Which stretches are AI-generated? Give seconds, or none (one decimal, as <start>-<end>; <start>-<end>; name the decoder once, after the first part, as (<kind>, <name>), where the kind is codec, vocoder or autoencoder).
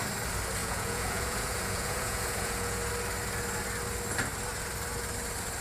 0.6-2.9 (vocoder, Vocos)